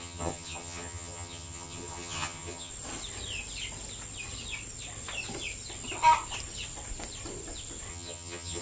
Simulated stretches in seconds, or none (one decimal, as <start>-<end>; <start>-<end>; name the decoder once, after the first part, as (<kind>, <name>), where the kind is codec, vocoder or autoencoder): 0.0-2.7 (vocoder, HiFi-GAN); 7.9-8.6